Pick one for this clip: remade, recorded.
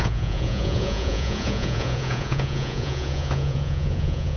remade